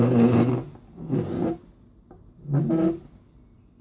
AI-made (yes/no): no